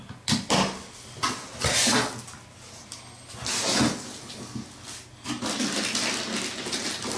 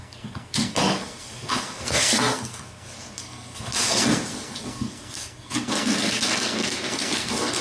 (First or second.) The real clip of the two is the first